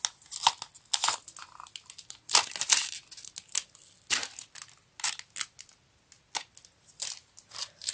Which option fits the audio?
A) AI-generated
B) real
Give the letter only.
B